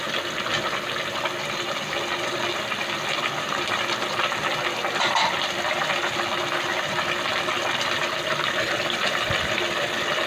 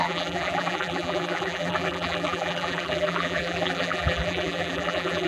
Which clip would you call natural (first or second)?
first